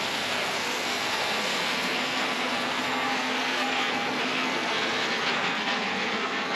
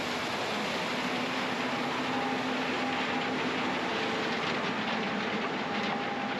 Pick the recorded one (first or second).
second